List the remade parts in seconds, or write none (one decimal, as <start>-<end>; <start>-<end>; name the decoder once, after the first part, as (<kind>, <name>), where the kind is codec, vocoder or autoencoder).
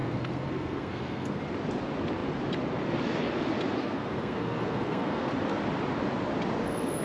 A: 0.0-1.4 (codec, SNAC); 3.8-5.3